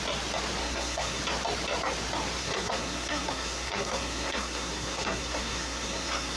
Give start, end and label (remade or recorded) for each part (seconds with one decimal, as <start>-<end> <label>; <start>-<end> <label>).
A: 0.0-0.6 recorded; 0.6-1.2 remade; 1.2-2.4 recorded; 2.4-6.4 remade